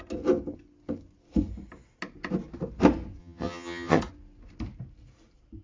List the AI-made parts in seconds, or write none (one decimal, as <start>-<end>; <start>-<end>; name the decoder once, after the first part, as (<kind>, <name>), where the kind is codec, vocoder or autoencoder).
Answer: 3.2-4.0 (vocoder, HiFi-GAN)